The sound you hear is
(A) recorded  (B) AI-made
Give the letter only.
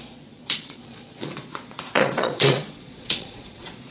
B